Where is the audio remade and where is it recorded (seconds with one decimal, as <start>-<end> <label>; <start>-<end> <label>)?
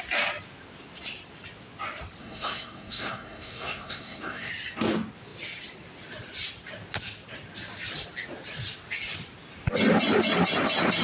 0.0-2.2 recorded; 2.2-4.5 remade; 4.5-11.0 recorded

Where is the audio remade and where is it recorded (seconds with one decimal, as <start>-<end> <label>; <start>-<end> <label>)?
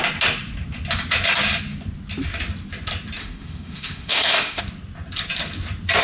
0.0-3.2 recorded; 3.2-4.6 remade; 4.6-6.0 recorded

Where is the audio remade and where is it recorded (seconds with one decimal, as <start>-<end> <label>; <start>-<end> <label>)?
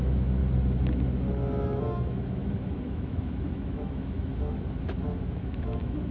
0.0-0.4 remade; 0.4-1.6 recorded; 1.6-4.3 remade; 4.3-5.2 recorded; 5.2-6.1 remade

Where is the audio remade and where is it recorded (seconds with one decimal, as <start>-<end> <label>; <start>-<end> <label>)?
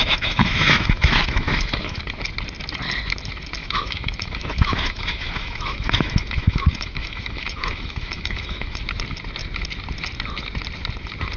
0.0-2.0 remade; 2.0-3.6 recorded; 3.6-8.8 remade; 8.8-11.4 recorded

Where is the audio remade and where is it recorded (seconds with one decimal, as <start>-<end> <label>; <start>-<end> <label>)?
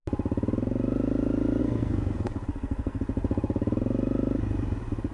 0.0-1.6 recorded; 1.6-3.0 remade; 3.0-5.1 recorded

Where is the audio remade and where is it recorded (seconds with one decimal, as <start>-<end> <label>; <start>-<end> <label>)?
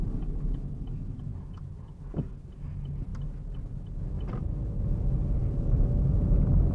0.0-1.3 recorded; 1.3-1.9 remade; 1.9-6.7 recorded